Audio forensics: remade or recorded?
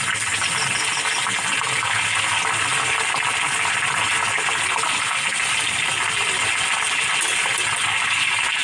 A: recorded